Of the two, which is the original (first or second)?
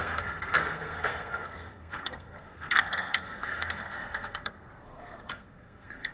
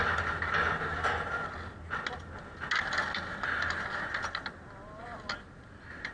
second